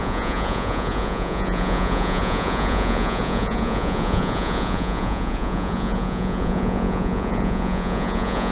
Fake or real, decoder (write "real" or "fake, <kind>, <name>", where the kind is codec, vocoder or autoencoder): fake, vocoder, Vocos